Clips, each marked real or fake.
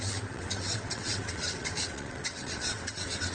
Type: fake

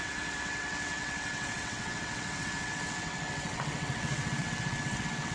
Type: fake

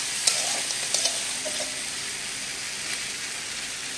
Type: real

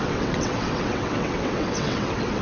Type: fake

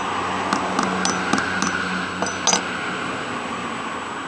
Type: real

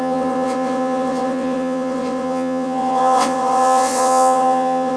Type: fake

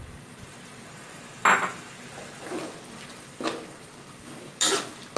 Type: real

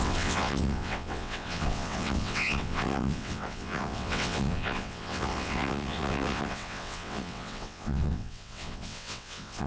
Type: fake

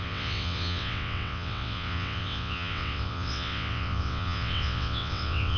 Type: fake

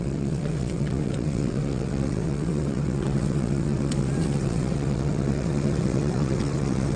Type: fake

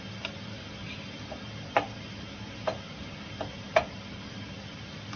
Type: real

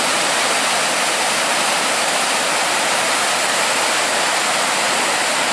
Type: real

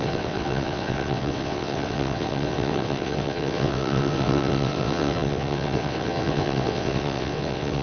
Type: fake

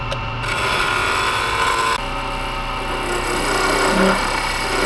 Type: real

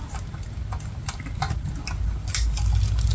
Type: real